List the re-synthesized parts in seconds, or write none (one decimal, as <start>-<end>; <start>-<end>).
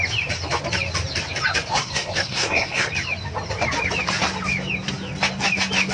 1.7-2.9